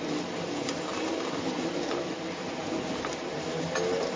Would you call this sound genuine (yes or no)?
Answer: yes